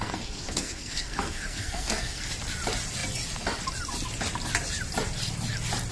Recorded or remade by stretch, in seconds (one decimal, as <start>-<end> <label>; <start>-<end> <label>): 0.0-2.2 remade; 2.2-5.9 recorded